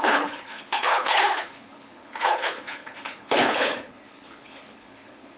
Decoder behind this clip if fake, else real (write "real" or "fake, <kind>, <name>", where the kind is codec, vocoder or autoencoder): fake, codec, HILCodec